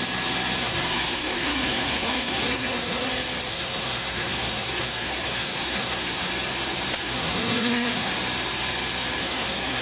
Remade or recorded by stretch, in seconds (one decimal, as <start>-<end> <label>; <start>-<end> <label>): 0.0-0.6 recorded; 0.6-3.1 remade; 3.1-3.5 recorded; 3.5-6.3 remade; 6.3-7.0 recorded; 7.0-8.1 remade; 8.1-9.2 recorded; 9.2-9.8 remade